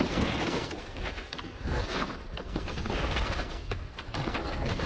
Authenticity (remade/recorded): remade